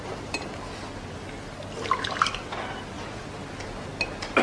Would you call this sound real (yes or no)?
yes